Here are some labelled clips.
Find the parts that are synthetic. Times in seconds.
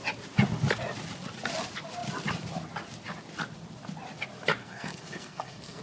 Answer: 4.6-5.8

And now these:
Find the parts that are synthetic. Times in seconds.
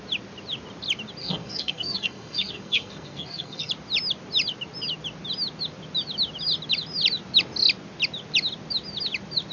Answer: 1.2-3.7